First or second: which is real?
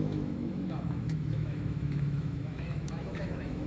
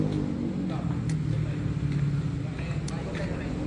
second